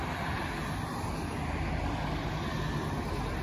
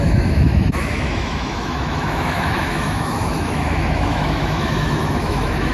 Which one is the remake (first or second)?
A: second